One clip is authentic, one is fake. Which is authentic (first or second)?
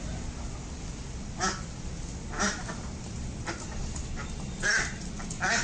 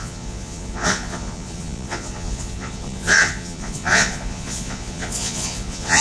first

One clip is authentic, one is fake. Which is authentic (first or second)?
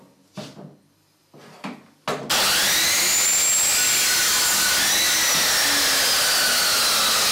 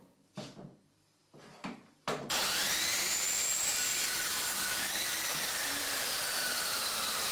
first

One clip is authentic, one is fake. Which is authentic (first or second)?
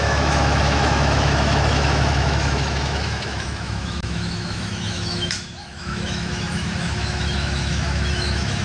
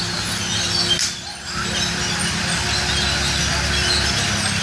second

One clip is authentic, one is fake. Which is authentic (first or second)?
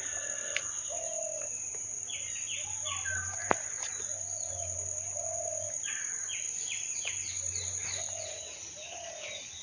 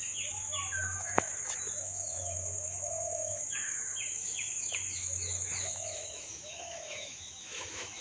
first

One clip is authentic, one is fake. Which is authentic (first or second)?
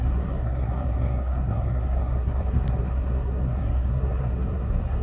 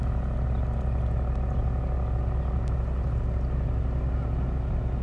second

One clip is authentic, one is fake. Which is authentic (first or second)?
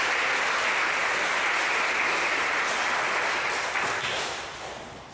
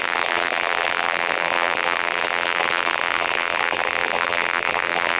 first